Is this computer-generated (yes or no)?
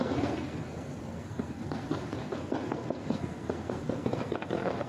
yes